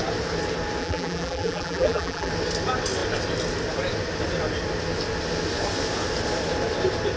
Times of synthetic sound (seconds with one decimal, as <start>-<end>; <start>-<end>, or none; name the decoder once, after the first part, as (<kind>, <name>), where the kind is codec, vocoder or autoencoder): 0.8-2.3 (vocoder, BigVGAN v2)